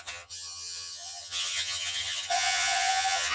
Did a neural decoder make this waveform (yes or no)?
yes